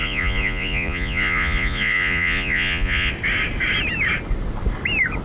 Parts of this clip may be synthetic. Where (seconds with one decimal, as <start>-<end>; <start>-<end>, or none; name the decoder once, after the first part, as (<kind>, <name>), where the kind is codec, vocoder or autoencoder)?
0.0-3.1 (vocoder, Vocos)